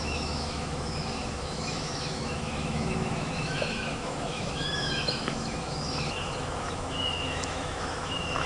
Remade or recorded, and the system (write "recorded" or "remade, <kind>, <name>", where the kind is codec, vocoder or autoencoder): remade, autoencoder, DAC-VAE